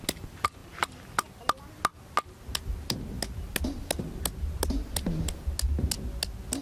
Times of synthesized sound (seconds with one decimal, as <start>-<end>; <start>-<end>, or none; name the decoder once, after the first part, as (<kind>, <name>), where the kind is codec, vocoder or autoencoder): none

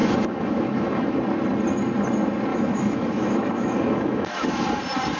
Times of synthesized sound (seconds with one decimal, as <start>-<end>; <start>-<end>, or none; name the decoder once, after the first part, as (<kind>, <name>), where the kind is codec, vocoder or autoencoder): 0.0-1.2 (autoencoder, DAC-VAE); 2.5-4.6